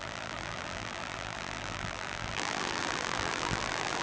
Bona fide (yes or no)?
no